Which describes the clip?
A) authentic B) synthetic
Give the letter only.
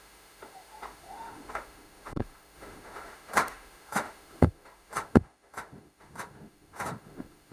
B